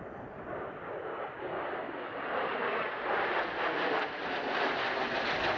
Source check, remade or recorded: recorded